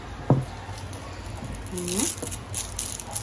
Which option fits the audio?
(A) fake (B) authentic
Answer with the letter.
B